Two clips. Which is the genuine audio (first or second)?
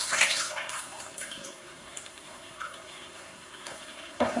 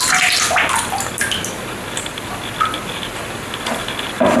second